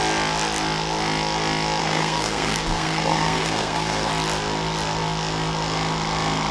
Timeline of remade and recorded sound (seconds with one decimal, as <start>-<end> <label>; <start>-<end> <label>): 0.0-1.8 recorded; 1.8-4.1 remade; 4.1-6.5 recorded